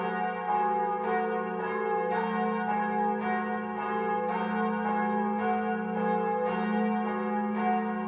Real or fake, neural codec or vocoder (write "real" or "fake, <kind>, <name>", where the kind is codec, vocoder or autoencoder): real